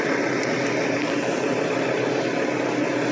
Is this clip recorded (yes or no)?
no